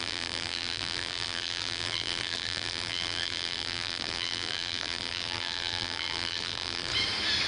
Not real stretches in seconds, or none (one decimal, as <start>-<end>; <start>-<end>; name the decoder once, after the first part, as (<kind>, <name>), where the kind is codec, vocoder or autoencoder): 0.0-6.9 (vocoder, BigVGAN v2)

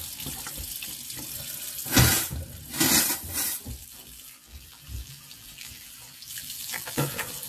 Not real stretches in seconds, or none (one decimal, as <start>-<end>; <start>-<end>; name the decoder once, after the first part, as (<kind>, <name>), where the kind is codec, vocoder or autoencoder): 3.8-7.5 (vocoder, BigVGAN v2)

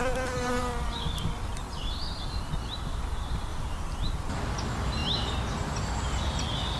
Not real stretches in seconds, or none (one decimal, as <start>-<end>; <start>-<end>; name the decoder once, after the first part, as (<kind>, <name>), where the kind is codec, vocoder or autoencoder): 1.5-2.5 (vocoder, BigVGAN v2); 3.5-4.4

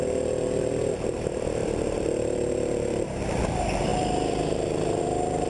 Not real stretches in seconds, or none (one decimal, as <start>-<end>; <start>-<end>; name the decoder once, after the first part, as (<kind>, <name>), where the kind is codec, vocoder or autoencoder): 1.6-3.3 (vocoder, BigVGAN v2)

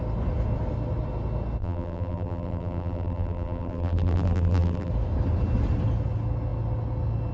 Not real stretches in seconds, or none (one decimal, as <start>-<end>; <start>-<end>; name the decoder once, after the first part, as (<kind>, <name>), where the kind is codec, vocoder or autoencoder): 1.6-4.9 (vocoder, BigVGAN v2)

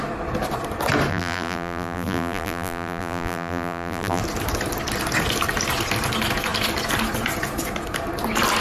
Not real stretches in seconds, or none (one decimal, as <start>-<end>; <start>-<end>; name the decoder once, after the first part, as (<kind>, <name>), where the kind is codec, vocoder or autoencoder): 1.1-4.2 (vocoder, BigVGAN v2)

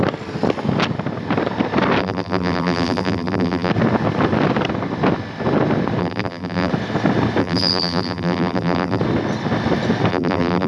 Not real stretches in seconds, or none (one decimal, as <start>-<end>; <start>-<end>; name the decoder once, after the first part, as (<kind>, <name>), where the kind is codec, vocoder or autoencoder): 2.0-3.7 (vocoder, BigVGAN v2); 6.0-6.7; 7.4-9.0; 10.1-10.7